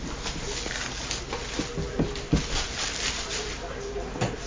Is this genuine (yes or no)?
yes